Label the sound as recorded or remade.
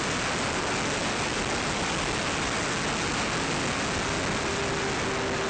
recorded